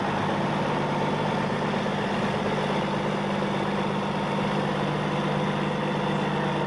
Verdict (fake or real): real